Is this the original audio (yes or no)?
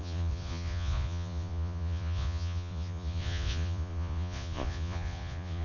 no